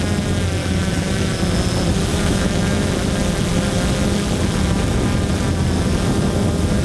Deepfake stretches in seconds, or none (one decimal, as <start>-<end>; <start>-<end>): 0.6-1.4; 2.1-2.9